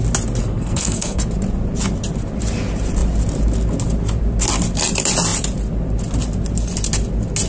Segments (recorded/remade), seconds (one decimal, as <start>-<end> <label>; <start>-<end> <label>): 0.0-0.4 recorded; 0.4-1.2 remade; 1.2-7.5 recorded